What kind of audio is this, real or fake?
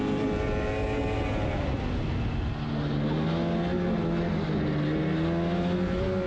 real